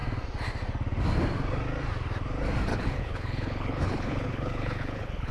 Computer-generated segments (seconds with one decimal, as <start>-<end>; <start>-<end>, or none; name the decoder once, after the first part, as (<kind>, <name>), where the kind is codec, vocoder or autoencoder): 2.7-5.3 (codec, HILCodec)